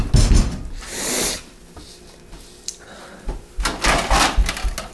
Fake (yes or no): no